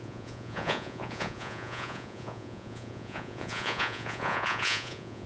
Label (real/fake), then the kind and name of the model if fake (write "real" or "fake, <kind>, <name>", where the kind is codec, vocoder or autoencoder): fake, vocoder, Vocos